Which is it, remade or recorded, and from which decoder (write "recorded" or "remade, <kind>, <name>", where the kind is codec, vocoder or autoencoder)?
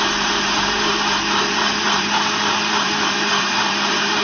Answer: remade, vocoder, BigVGAN v2